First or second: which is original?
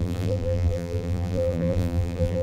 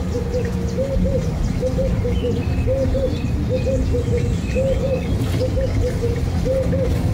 second